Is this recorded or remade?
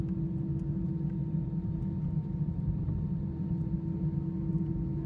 recorded